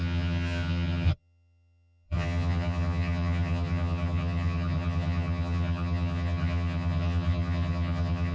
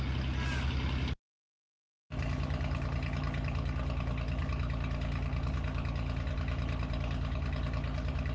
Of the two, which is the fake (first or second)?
first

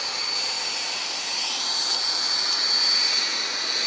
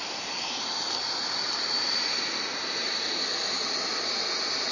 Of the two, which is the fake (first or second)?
second